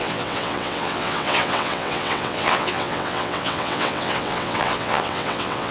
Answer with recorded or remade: remade